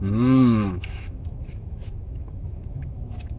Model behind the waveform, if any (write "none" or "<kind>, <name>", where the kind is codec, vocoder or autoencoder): autoencoder, DAC-VAE